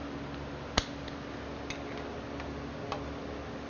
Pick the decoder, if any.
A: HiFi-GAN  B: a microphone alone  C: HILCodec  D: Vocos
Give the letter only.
B